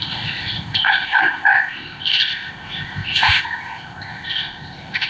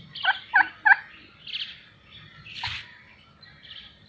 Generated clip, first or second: first